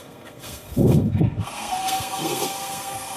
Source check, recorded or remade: remade